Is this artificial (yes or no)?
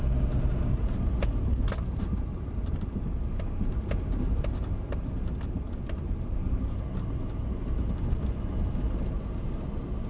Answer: no